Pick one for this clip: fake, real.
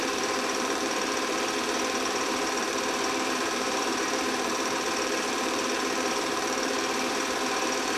fake